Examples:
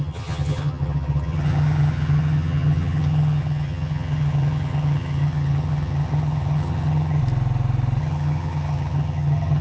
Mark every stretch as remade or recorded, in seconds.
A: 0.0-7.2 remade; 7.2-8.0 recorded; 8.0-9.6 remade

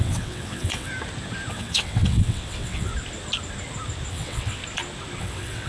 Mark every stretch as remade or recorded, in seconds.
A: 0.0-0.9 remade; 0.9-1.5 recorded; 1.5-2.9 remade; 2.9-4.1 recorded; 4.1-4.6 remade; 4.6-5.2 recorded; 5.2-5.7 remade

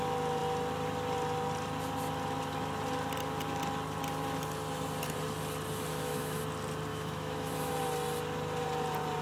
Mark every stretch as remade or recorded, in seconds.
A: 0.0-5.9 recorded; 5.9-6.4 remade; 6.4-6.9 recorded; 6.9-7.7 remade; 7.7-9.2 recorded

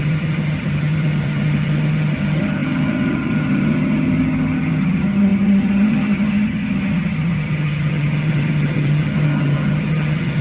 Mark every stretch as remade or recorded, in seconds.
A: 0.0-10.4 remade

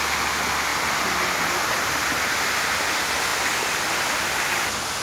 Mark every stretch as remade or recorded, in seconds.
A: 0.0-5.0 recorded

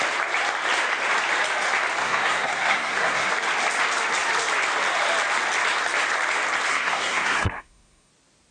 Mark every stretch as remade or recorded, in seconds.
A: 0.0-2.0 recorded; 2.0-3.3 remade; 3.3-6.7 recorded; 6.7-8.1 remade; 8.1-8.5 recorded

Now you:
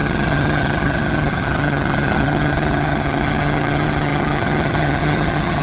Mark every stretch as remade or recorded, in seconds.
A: 0.0-5.6 remade

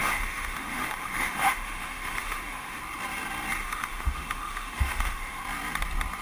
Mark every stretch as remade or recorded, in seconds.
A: 0.0-2.8 remade; 2.8-3.6 recorded; 3.6-5.4 remade; 5.4-6.2 recorded